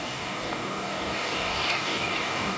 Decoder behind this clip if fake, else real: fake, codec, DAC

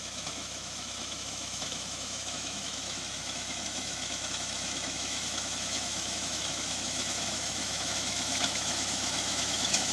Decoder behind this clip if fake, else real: fake, autoencoder, DAC-VAE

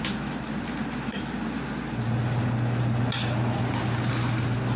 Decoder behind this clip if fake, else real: real